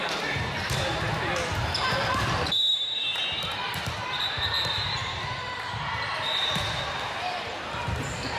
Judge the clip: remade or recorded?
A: remade